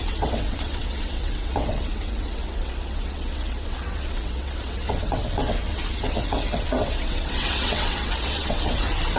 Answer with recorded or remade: remade